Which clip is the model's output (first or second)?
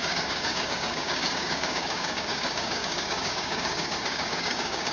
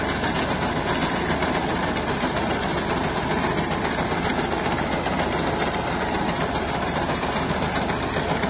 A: first